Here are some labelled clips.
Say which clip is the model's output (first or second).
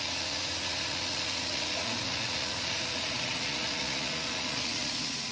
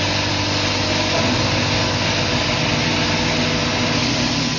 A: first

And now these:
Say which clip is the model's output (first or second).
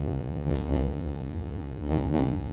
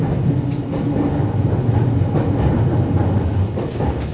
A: first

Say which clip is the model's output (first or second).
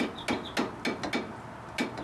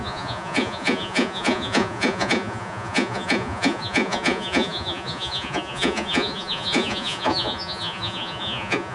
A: second